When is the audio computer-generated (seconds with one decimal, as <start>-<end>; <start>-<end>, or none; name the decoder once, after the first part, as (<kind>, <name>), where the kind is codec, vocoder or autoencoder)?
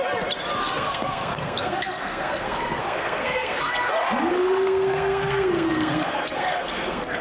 0.6-3.9 (codec, SNAC); 4.3-7.2